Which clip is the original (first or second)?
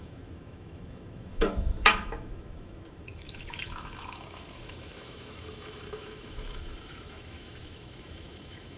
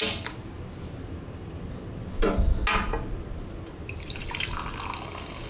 second